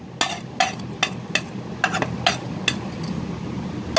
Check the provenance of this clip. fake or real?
real